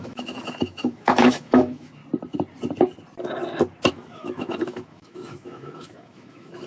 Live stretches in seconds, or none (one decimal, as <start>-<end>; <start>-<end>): 2.0-3.9